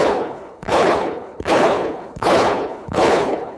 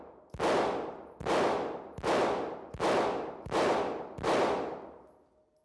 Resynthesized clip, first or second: first